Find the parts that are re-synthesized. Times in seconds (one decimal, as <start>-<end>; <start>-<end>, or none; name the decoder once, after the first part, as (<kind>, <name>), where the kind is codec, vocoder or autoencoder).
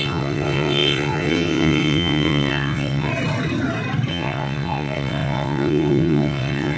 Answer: 0.0-3.1 (vocoder, WaveNeXt); 4.1-6.8